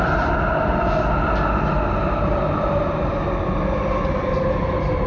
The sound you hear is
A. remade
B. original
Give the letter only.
B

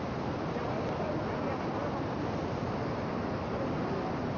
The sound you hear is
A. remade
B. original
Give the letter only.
B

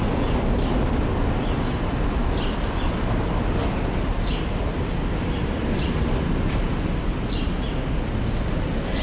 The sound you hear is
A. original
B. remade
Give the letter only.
A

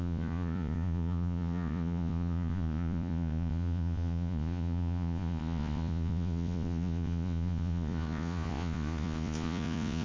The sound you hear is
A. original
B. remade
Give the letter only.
B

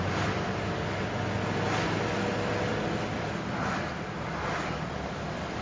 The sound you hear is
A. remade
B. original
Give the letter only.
B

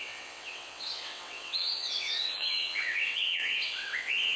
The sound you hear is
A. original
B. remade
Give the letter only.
B